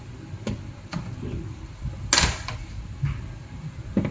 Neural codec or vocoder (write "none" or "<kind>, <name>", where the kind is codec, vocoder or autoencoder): none